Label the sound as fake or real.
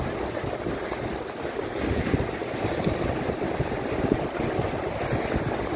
real